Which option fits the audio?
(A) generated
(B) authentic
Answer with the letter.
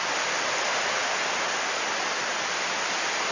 B